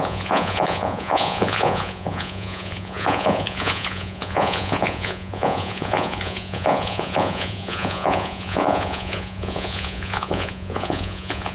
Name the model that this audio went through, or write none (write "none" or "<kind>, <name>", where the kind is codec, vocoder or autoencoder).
vocoder, Vocos